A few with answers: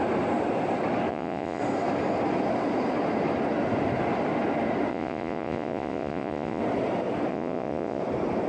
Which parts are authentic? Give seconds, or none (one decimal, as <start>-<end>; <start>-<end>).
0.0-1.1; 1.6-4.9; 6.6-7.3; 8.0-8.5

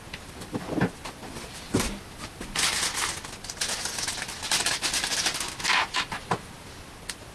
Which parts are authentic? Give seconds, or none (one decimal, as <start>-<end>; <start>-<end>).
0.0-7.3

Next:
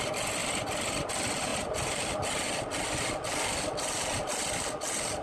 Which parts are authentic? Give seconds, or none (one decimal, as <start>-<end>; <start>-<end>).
0.0-5.2

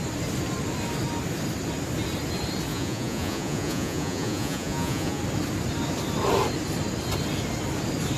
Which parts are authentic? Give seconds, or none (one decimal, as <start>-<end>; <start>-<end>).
0.0-2.7; 5.2-8.2

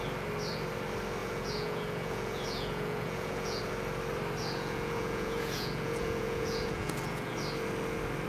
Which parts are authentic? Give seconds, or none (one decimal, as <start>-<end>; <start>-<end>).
0.0-1.2; 3.6-4.4; 7.3-8.3